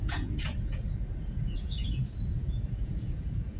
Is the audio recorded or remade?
remade